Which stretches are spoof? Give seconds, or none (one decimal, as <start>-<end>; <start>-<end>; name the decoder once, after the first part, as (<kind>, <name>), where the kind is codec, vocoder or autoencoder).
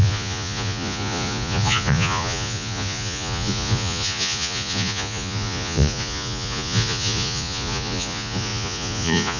0.0-9.4 (vocoder, Vocos)